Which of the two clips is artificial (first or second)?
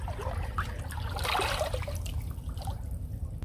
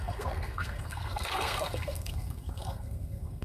second